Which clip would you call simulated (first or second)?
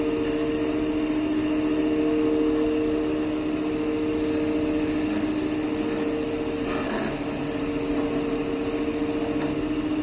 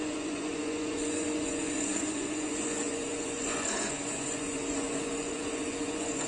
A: second